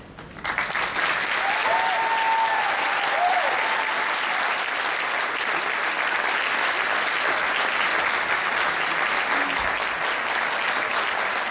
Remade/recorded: recorded